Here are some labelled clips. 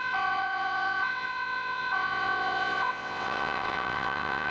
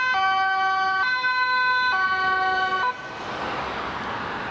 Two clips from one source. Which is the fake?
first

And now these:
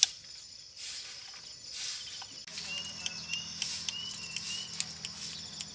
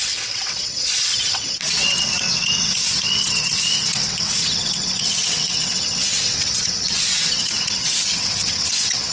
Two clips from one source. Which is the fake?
second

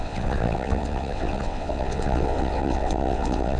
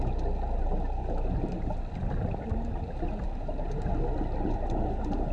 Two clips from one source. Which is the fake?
first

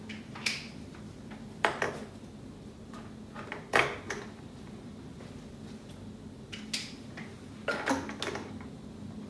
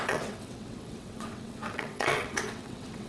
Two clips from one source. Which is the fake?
second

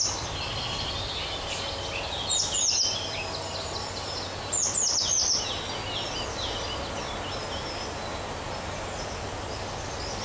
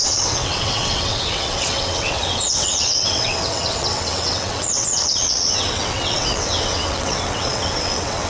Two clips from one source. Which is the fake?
second